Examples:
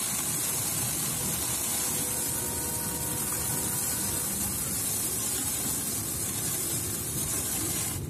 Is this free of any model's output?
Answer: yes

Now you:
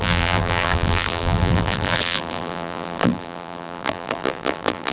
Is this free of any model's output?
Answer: no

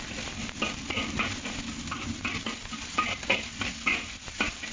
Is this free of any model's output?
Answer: yes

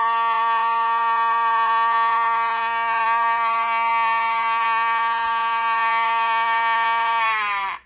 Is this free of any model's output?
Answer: no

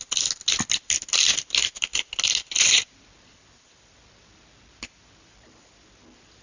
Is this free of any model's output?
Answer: yes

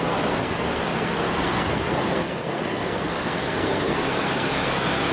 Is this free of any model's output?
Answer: no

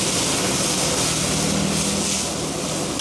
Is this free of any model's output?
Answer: yes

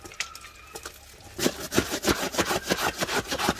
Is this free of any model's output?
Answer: yes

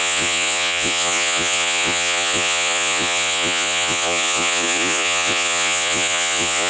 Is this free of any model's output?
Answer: no